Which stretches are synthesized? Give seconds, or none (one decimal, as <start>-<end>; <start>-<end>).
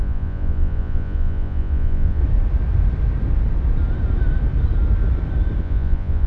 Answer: 0.0-2.2; 5.6-6.3